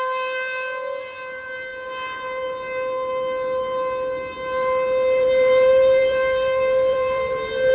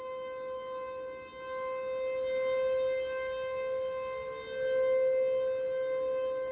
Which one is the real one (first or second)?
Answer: second